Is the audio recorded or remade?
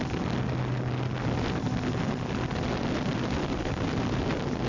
recorded